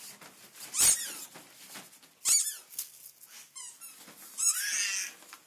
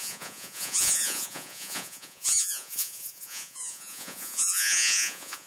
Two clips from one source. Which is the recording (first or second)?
first